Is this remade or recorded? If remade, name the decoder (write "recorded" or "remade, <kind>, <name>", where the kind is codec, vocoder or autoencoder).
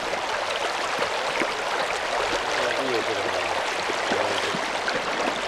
recorded